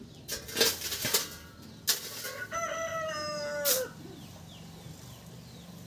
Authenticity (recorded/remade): recorded